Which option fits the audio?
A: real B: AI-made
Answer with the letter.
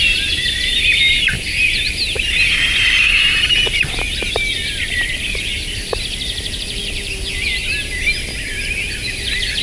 A